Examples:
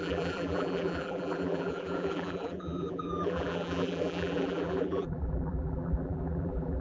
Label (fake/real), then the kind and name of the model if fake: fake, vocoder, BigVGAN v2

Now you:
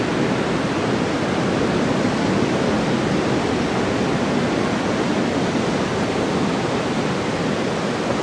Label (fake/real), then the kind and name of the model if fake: real